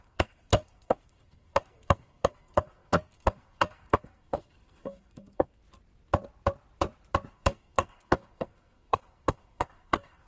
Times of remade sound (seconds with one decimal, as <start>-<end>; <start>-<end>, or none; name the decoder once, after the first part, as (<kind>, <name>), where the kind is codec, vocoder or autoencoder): 0.0-5.6 (codec, SNAC); 7.3-10.3